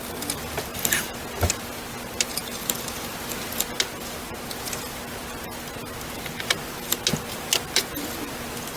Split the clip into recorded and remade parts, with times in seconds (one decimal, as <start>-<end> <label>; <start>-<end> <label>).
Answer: 0.0-8.8 recorded